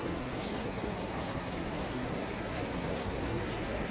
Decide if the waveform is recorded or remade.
remade